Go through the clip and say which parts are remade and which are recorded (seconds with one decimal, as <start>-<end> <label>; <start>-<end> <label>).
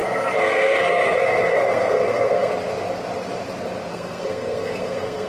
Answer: 0.0-2.5 remade; 2.5-3.9 recorded; 3.9-5.3 remade